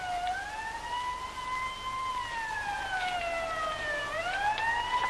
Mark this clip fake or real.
real